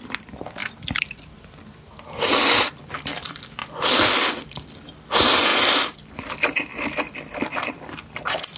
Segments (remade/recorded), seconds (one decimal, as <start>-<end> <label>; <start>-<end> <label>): 0.0-0.6 recorded; 0.6-2.7 remade; 2.7-5.5 recorded; 5.5-6.2 remade; 6.2-6.7 recorded; 6.7-7.8 remade; 7.8-8.6 recorded